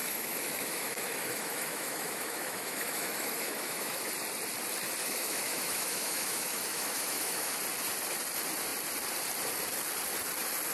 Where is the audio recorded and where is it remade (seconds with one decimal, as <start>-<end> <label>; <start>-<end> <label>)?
0.0-4.1 remade; 4.1-5.0 recorded; 5.0-7.6 remade; 7.6-10.7 recorded